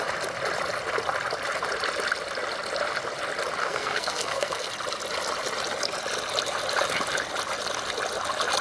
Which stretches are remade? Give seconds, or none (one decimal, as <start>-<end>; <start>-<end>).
3.6-4.7